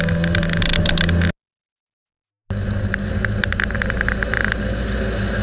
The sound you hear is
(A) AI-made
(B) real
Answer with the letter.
B